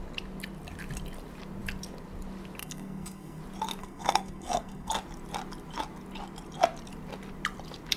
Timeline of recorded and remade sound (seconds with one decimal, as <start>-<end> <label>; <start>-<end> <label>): 0.0-2.6 recorded; 2.6-3.4 remade; 3.4-3.8 recorded; 3.8-4.9 remade; 4.9-8.0 recorded